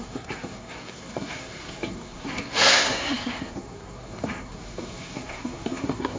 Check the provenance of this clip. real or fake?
fake